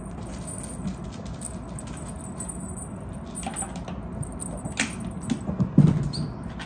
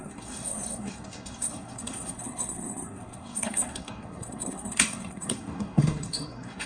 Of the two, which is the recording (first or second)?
first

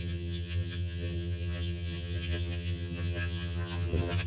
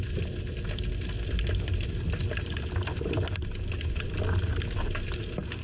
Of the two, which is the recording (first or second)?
second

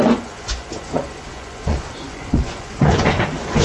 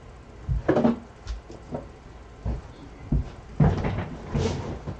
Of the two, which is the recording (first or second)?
second